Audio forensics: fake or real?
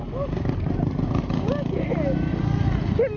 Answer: real